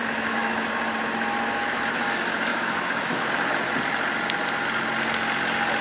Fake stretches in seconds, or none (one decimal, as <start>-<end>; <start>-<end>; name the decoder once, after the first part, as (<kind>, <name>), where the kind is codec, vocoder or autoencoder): 0.0-0.7 (autoencoder, DAC-VAE); 2.5-3.3